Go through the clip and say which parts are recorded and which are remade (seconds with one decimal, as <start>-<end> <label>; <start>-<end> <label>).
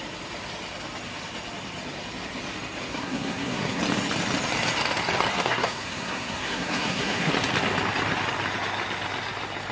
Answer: 0.0-2.9 recorded; 2.9-3.8 remade; 3.8-5.3 recorded; 5.3-7.3 remade; 7.3-9.7 recorded